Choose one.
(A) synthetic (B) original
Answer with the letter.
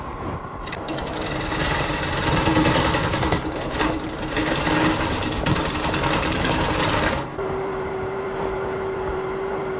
A